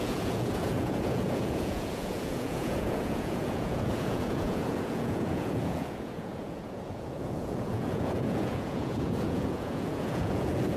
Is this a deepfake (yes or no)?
yes